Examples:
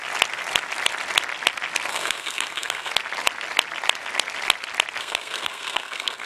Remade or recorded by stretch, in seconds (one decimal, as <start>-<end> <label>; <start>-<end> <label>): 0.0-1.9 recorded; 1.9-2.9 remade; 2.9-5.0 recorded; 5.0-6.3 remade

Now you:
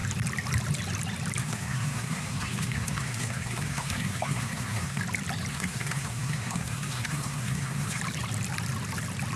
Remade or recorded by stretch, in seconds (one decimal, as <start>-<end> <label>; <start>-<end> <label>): 0.0-1.4 recorded; 1.4-5.0 remade; 5.0-5.5 recorded; 5.5-8.0 remade; 8.0-9.4 recorded

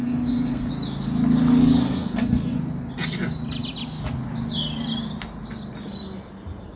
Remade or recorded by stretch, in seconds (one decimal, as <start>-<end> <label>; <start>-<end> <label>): 0.0-0.7 remade; 0.7-1.6 recorded; 1.6-2.6 remade; 2.6-6.8 recorded

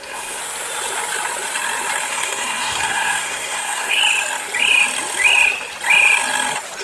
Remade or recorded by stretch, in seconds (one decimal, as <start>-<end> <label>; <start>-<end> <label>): 0.0-0.4 remade; 0.4-2.1 recorded; 2.1-4.0 remade; 4.0-6.8 recorded

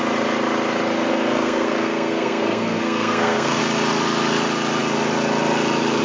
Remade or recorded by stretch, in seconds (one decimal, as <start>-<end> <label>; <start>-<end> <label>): 0.0-1.1 recorded; 1.1-3.6 remade; 3.6-6.0 recorded

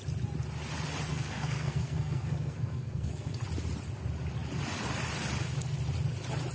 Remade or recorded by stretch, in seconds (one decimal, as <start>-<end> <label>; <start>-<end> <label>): 0.0-1.1 recorded; 1.1-3.4 remade; 3.4-6.5 recorded

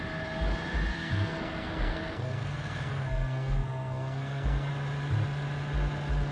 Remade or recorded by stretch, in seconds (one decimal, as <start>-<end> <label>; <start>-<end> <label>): 0.0-0.9 recorded; 0.9-4.7 remade; 4.7-6.3 recorded